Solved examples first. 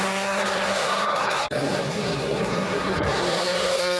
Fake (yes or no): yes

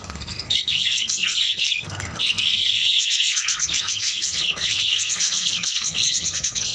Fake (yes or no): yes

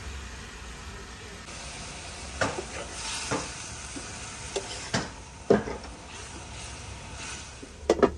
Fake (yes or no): no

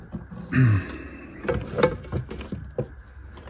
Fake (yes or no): no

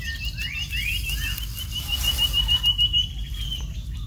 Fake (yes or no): no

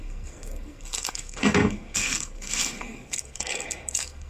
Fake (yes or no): yes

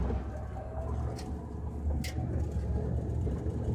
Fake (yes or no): no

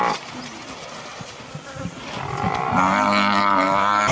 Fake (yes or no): no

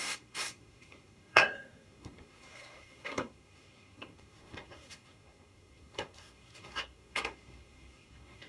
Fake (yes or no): yes